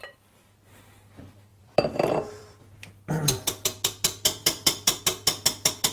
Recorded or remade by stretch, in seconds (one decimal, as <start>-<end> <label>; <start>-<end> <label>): 0.0-1.5 recorded; 1.5-2.6 remade; 2.6-4.4 recorded; 4.4-5.0 remade; 5.0-5.9 recorded